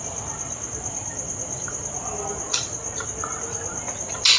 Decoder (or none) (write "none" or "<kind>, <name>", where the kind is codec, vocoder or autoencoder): none